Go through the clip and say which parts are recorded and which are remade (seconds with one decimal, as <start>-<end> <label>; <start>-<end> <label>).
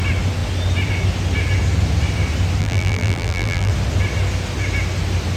0.0-2.6 recorded; 2.6-3.7 remade; 3.7-5.4 recorded